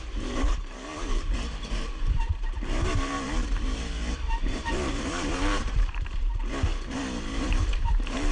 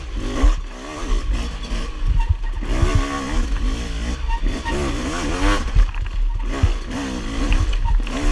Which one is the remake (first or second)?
first